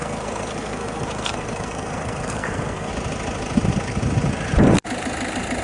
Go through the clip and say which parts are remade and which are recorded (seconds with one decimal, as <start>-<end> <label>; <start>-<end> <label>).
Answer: 0.0-2.9 remade; 2.9-5.6 recorded